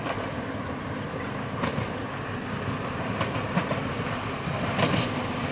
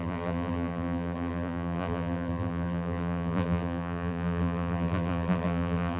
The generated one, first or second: second